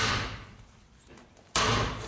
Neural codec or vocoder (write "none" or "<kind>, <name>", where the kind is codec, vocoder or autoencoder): vocoder, BigVGAN v2